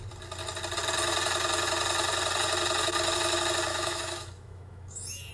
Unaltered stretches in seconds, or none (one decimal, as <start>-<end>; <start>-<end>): 0.0-3.7

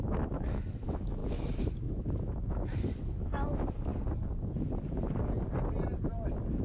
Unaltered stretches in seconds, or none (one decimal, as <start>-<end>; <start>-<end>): 3.9-6.6

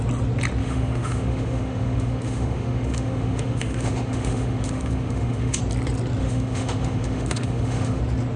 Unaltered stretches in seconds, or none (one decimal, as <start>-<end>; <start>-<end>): 0.0-0.6; 5.6-6.2; 8.0-8.4

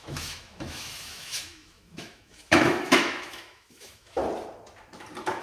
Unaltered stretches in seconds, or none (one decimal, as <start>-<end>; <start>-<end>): 4.2-5.4